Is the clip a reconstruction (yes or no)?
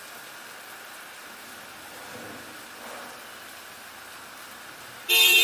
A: no